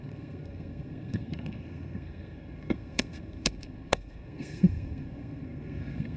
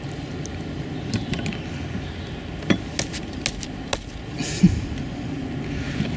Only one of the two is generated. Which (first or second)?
first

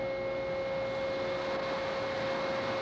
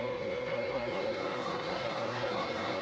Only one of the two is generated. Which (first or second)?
second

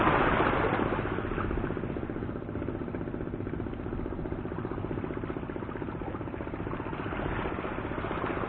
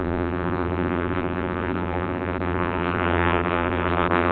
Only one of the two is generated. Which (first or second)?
second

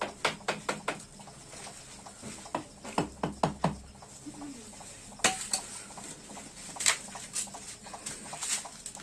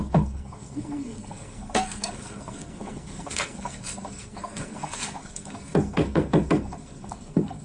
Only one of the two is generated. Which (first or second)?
second